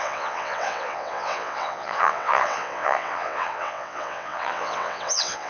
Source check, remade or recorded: remade